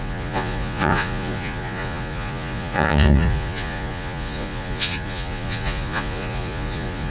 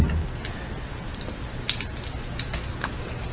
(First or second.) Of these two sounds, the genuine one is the second